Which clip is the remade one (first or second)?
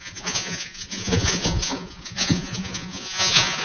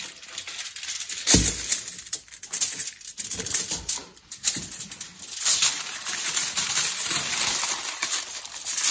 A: first